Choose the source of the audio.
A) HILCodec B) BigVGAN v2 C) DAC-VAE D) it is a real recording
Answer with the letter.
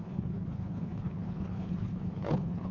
A